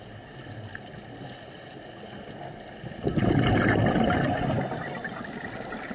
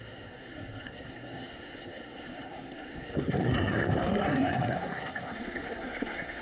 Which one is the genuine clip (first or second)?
first